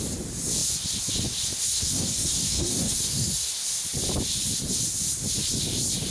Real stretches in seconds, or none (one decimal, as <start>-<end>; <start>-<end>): 0.0-1.7; 3.5-6.1